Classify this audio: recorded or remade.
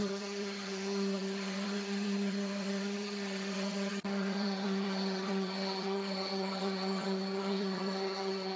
remade